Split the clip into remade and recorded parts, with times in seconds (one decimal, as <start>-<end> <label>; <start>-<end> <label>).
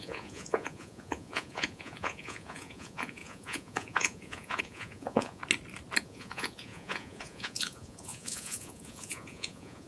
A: 0.0-5.4 remade; 5.4-6.0 recorded; 6.0-9.9 remade